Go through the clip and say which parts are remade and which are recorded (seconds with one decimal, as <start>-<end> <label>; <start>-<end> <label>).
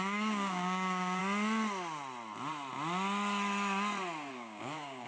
0.0-1.2 remade; 1.2-4.3 recorded; 4.3-5.1 remade